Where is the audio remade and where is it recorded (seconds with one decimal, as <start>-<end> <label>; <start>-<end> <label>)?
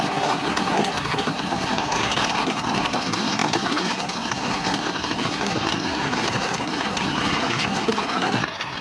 0.0-8.8 remade